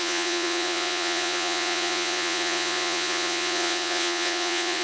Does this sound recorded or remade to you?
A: remade